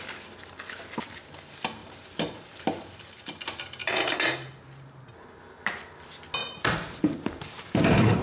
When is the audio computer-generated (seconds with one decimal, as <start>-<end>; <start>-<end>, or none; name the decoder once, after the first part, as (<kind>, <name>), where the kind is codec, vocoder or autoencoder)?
1.8-2.5 (vocoder, BigVGAN v2); 6.4-8.2